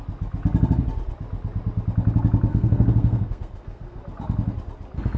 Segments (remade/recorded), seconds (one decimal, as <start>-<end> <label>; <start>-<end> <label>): 0.0-2.5 recorded; 2.5-4.0 remade; 4.0-5.2 recorded